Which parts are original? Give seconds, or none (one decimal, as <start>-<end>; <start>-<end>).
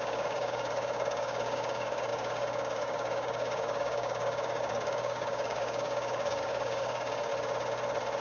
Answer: 7.3-8.2